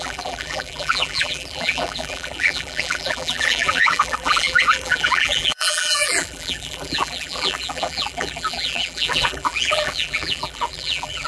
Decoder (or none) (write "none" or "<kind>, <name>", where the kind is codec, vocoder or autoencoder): vocoder, BigVGAN v2